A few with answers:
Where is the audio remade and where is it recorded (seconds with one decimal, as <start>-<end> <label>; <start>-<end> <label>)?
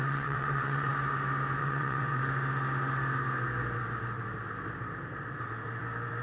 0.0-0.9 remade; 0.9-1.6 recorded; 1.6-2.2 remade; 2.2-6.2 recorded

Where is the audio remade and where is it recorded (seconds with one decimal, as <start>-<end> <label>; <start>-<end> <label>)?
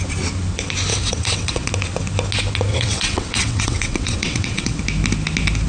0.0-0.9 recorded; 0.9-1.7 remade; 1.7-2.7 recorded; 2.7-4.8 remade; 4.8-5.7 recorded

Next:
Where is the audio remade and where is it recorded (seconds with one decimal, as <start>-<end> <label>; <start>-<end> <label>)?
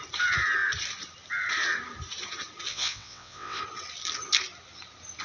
0.0-2.7 recorded; 2.7-3.6 remade; 3.6-5.2 recorded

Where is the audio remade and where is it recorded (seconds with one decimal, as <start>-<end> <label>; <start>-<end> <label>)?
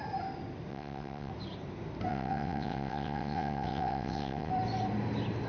0.0-0.7 recorded; 0.7-1.3 remade; 1.3-2.1 recorded; 2.1-4.5 remade; 4.5-5.5 recorded